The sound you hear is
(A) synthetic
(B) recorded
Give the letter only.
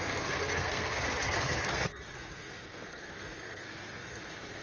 A